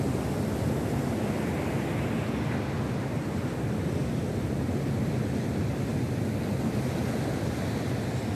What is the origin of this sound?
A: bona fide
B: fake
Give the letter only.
A